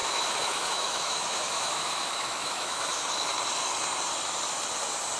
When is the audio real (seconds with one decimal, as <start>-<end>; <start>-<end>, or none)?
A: 3.1-5.2